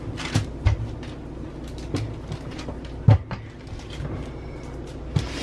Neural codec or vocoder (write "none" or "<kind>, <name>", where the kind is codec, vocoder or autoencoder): none